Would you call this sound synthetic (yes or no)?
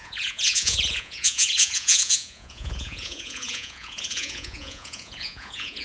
yes